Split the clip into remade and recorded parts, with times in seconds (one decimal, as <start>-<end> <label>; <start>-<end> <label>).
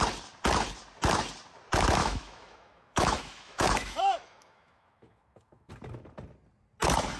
0.0-2.0 recorded; 2.0-5.7 remade; 5.7-7.2 recorded